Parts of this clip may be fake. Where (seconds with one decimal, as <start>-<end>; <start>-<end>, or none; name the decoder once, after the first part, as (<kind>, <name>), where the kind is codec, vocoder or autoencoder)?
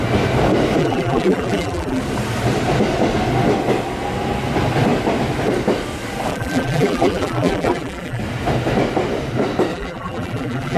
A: 0.8-2.0 (vocoder, BigVGAN v2); 6.3-8.2; 9.7-10.8